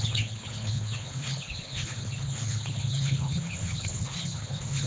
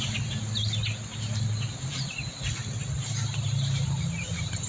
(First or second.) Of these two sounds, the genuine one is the second